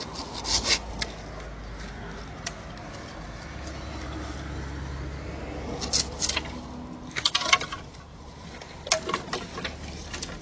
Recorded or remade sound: recorded